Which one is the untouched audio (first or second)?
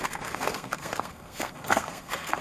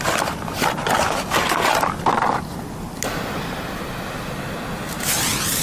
second